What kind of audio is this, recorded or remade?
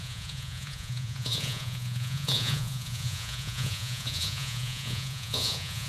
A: remade